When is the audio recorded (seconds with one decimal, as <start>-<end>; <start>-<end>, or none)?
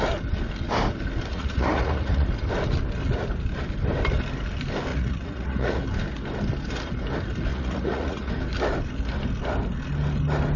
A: 0.0-1.3; 2.3-4.9; 5.8-7.5; 8.3-10.6